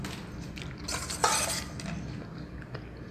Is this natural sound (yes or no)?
yes